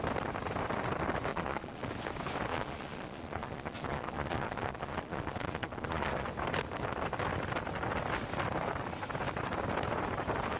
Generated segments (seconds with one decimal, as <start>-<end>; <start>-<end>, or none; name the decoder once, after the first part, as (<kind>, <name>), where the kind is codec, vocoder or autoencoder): 1.3-1.9 (vocoder, Vocos); 2.5-6.3